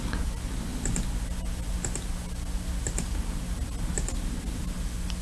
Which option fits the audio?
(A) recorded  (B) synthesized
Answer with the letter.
A